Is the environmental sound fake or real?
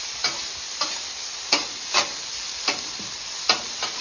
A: fake